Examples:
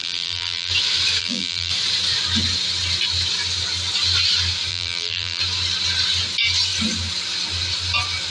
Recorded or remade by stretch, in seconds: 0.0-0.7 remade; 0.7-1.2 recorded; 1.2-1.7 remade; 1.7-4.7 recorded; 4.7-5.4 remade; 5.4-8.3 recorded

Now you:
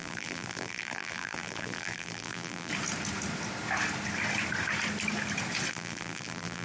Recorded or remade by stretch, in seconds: 0.0-2.7 remade; 2.7-5.7 recorded; 5.7-6.6 remade